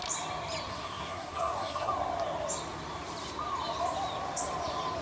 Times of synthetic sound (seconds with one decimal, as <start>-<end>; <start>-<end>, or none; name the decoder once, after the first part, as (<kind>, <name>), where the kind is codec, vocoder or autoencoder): 0.7-1.9 (codec, SNAC)